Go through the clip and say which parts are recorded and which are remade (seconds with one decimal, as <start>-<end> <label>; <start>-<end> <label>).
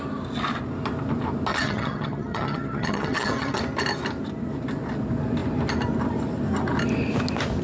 0.0-1.5 recorded; 1.5-3.6 remade; 3.6-7.6 recorded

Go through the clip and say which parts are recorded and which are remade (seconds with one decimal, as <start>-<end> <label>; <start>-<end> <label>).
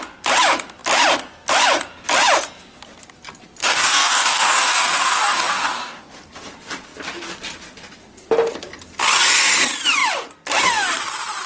0.0-3.6 recorded; 3.6-6.1 remade; 6.1-11.5 recorded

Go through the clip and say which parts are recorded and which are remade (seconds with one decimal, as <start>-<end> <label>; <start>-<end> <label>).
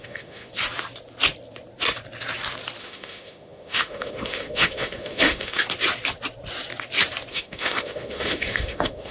0.0-0.5 remade; 0.5-2.8 recorded; 2.8-5.6 remade; 5.6-7.3 recorded; 7.3-9.1 remade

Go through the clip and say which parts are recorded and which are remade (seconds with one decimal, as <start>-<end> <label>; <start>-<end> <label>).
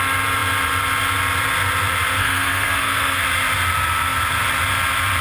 0.0-2.2 recorded; 2.2-3.2 remade; 3.2-5.2 recorded